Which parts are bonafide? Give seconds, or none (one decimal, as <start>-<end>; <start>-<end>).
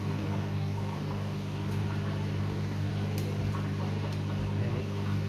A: 1.8-2.4; 2.9-4.8